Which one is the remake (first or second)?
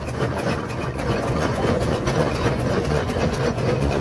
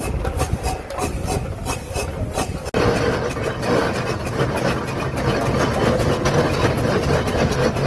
first